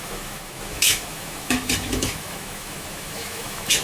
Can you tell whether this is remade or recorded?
remade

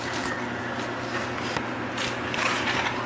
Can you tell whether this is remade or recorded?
recorded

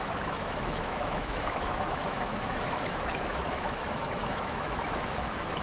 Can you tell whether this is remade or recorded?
remade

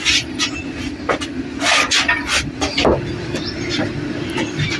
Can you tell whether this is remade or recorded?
recorded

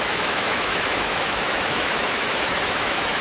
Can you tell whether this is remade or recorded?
remade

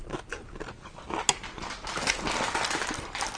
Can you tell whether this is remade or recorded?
recorded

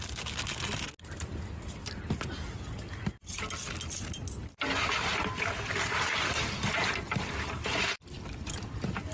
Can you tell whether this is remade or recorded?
recorded